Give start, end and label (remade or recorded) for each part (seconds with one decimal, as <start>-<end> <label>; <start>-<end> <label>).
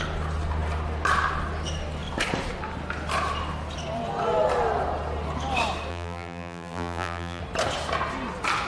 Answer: 0.0-5.9 recorded; 5.9-7.4 remade; 7.4-8.7 recorded